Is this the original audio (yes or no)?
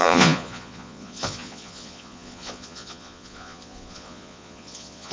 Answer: no